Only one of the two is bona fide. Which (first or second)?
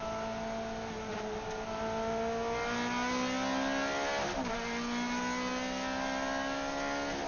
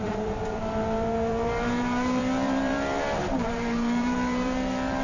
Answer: first